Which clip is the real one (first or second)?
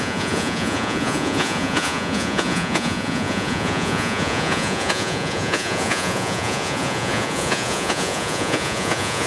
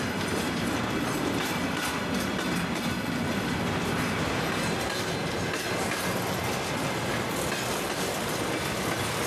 second